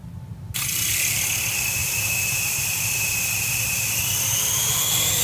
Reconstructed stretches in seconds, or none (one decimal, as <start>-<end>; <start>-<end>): none